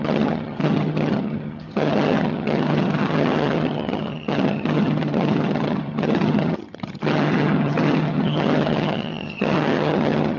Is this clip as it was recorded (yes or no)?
no